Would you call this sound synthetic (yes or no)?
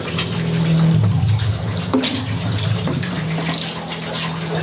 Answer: no